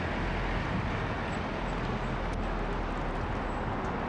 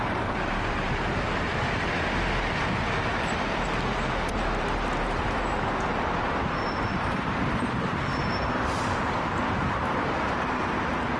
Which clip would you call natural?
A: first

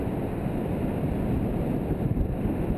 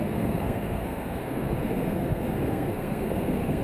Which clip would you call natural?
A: first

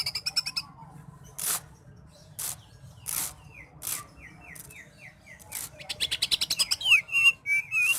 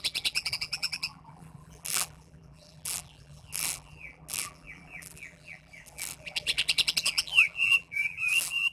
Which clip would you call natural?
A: first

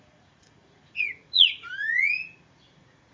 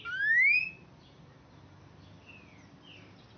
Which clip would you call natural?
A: second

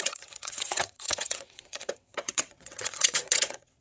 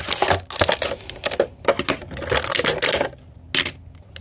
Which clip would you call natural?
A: second